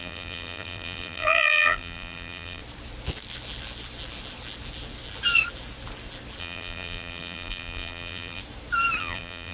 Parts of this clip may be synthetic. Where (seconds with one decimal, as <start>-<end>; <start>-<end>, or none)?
0.0-2.6; 6.4-8.4; 9.0-9.5